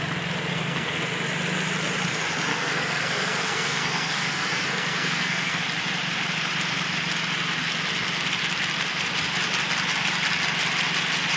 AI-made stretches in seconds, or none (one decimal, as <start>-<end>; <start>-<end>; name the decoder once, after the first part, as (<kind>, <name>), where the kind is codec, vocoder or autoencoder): 0.5-1.0 (codec, SNAC); 2.5-5.6